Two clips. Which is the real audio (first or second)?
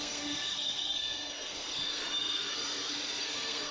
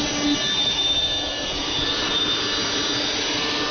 second